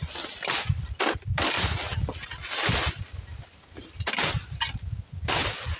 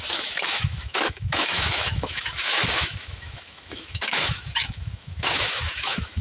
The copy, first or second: second